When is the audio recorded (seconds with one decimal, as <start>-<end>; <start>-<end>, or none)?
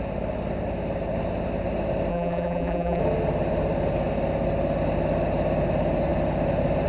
0.0-2.1; 3.0-6.9